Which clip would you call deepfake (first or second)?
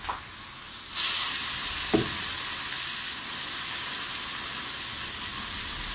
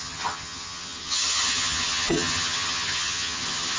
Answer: second